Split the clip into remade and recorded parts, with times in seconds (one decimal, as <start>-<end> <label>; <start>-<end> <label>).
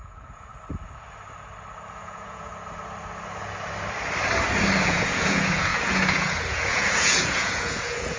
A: 0.0-0.5 remade; 0.5-1.9 recorded; 1.9-2.5 remade; 2.5-4.8 recorded; 4.8-8.2 remade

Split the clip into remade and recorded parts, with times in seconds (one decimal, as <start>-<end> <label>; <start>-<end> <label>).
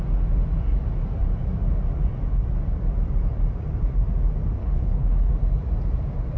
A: 0.0-4.6 recorded; 4.6-5.3 remade; 5.3-6.4 recorded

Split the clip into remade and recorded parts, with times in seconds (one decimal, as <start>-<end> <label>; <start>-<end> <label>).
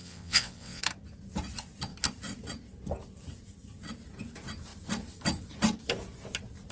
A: 0.0-0.8 remade; 0.8-6.7 recorded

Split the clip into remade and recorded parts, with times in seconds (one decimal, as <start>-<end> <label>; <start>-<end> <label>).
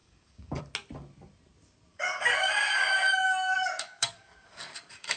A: 0.0-0.6 remade; 0.6-1.9 recorded; 1.9-5.2 remade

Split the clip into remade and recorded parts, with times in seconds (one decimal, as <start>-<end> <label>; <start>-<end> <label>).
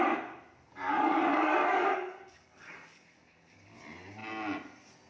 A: 0.0-0.7 recorded; 0.7-3.8 remade; 3.8-5.1 recorded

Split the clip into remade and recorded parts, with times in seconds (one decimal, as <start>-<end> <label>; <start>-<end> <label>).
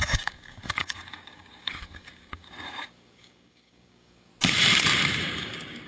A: 0.0-4.3 remade; 4.3-5.2 recorded; 5.2-5.9 remade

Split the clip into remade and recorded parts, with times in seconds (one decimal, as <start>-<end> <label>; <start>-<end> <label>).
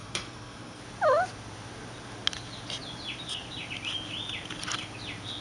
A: 0.0-0.8 remade; 0.8-5.4 recorded